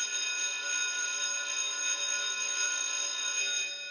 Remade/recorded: recorded